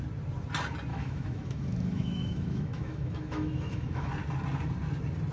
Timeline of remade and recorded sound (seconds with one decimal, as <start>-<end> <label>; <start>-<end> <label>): 0.0-0.9 recorded; 0.9-4.1 remade; 4.1-5.3 recorded